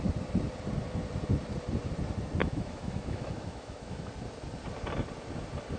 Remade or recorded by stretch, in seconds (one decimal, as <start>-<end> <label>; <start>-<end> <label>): 0.0-2.4 recorded; 2.4-4.1 remade; 4.1-5.8 recorded

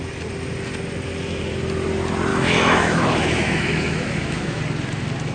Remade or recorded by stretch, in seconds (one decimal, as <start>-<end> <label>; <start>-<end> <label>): 0.0-2.3 recorded; 2.3-4.6 remade; 4.6-5.3 recorded

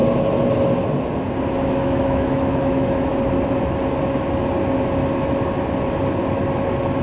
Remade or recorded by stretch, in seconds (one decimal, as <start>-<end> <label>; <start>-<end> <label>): 0.0-1.6 recorded; 1.6-3.1 remade; 3.1-7.0 recorded

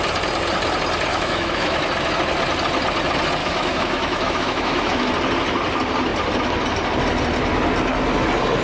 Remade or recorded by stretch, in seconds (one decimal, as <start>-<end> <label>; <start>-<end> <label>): 0.0-1.1 recorded; 1.1-1.8 remade; 1.8-3.4 recorded; 3.4-5.1 remade; 5.1-8.6 recorded

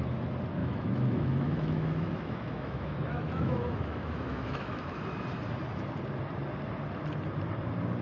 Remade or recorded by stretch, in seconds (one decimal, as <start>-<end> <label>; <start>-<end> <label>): 0.0-0.6 recorded; 0.6-5.0 remade; 5.0-8.0 recorded

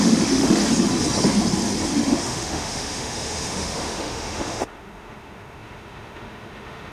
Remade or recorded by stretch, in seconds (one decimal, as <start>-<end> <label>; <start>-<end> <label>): 0.0-0.6 remade; 0.6-2.0 recorded; 2.0-6.9 remade

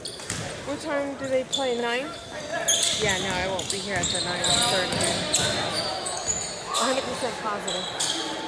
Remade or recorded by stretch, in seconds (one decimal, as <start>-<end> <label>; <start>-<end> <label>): 0.0-1.8 recorded; 1.8-2.4 remade; 2.4-5.4 recorded; 5.4-7.0 remade; 7.0-8.5 recorded

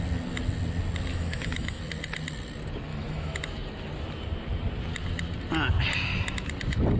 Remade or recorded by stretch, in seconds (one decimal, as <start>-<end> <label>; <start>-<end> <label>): 0.0-1.1 recorded; 1.1-1.8 remade; 1.8-2.9 recorded; 2.9-3.4 remade; 3.4-7.0 recorded